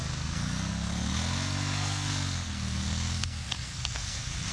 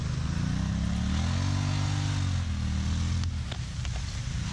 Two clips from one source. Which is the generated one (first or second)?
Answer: first